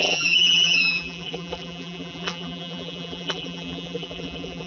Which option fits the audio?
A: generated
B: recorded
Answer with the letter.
A